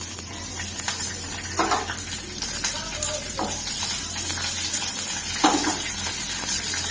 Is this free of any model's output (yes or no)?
yes